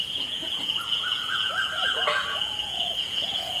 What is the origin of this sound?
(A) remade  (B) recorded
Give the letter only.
A